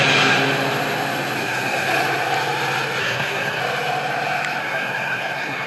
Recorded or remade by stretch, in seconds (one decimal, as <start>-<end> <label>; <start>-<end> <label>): 0.0-1.4 recorded; 1.4-1.9 remade; 1.9-3.0 recorded; 3.0-3.6 remade; 3.6-4.6 recorded; 4.6-5.7 remade